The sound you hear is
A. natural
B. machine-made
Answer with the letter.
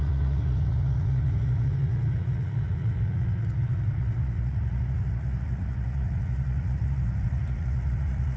B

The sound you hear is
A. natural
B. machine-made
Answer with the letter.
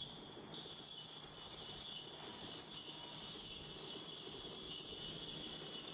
A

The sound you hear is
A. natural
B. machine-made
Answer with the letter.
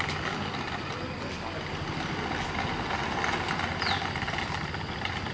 A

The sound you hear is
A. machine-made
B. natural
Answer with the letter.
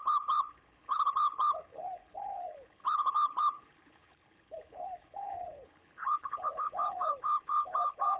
A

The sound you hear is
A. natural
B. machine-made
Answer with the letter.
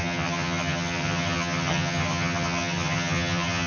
B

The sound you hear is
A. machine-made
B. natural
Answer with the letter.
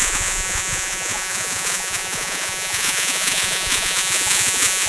A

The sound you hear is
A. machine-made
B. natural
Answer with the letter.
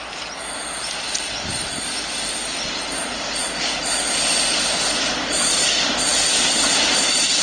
B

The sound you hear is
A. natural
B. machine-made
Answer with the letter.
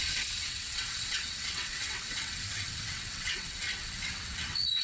B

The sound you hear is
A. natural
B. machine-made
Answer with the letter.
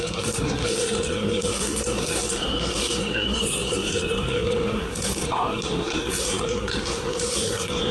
B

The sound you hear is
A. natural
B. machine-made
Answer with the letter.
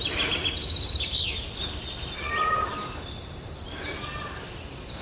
A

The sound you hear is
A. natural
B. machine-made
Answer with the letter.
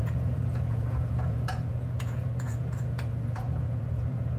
B